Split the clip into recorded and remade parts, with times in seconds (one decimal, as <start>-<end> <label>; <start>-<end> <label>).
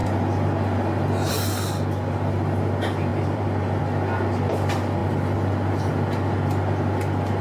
0.0-3.1 recorded; 3.1-3.8 remade; 3.8-7.4 recorded